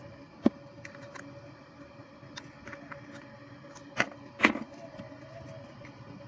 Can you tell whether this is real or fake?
real